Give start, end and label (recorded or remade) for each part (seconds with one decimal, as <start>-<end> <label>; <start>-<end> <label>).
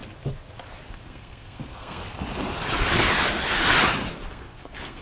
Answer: 0.0-0.9 recorded; 0.9-2.0 remade; 2.0-4.3 recorded; 4.3-5.0 remade